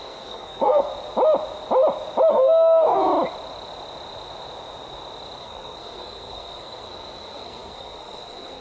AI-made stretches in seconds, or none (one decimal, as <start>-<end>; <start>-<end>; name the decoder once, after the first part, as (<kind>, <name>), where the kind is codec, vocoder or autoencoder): 0.0-0.9 (codec, SNAC); 2.3-3.1; 5.4-8.6